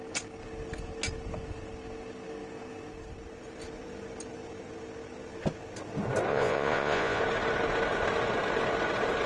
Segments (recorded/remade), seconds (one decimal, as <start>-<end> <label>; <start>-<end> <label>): 0.0-6.3 recorded; 6.3-7.2 remade; 7.2-9.3 recorded